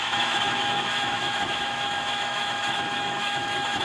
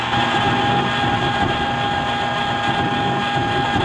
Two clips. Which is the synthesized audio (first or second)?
first